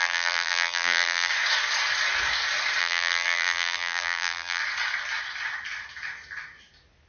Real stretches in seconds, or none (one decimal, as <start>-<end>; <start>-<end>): 1.3-2.8; 4.6-7.1